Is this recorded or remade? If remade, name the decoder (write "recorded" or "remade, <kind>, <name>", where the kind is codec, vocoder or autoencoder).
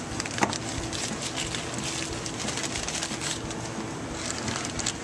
recorded